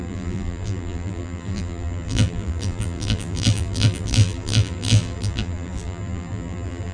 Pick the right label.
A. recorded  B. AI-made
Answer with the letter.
B